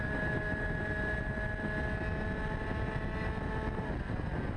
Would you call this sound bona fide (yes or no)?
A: yes